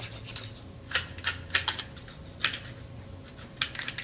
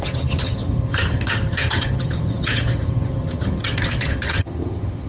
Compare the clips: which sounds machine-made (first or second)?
second